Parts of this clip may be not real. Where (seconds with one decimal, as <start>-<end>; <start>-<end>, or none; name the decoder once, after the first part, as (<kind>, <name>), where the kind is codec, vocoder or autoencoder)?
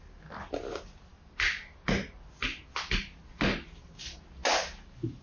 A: none